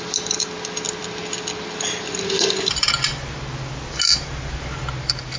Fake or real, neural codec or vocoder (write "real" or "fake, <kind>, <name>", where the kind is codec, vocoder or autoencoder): real